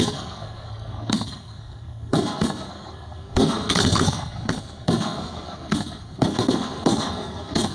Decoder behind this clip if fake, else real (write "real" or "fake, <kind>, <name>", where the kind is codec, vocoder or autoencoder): fake, codec, SNAC